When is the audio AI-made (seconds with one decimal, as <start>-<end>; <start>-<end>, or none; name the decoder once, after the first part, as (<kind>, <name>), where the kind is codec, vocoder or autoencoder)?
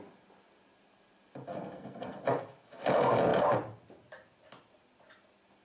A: 1.5-2.2 (codec, SNAC)